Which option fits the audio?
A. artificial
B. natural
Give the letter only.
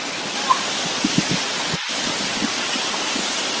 B